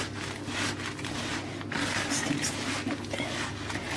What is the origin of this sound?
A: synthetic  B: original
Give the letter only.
B